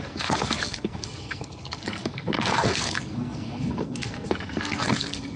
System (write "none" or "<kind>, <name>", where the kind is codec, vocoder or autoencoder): codec, SNAC